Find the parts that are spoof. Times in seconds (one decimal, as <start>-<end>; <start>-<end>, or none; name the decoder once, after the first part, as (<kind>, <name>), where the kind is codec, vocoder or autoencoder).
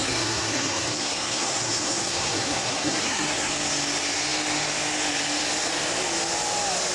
0.0-3.5 (codec, SNAC)